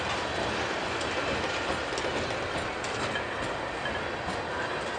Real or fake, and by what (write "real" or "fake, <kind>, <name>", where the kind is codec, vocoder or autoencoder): real